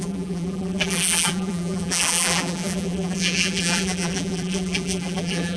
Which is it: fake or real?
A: fake